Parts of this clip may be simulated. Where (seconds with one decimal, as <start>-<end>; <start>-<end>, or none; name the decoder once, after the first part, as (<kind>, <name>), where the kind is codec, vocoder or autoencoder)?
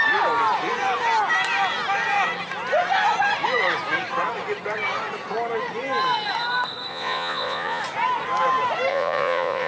6.9-7.8 (vocoder, Vocos); 8.9-9.7